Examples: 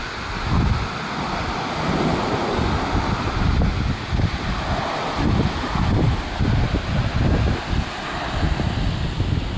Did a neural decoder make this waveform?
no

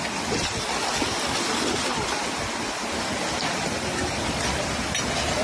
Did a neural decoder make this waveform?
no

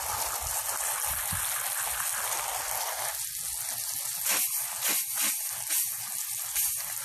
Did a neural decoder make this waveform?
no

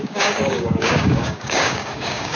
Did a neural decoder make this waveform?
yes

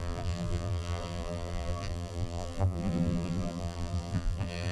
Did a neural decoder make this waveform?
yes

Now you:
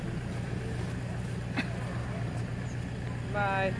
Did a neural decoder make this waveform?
no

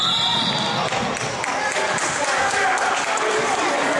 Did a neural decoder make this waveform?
no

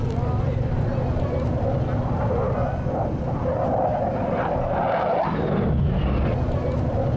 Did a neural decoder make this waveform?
no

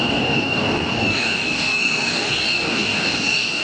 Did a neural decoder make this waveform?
yes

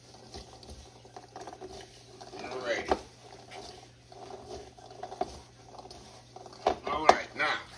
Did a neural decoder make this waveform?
no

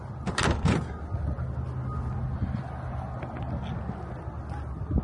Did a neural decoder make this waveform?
no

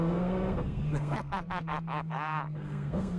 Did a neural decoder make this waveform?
yes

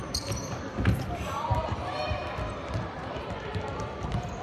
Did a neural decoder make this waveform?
yes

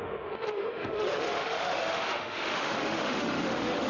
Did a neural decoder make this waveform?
yes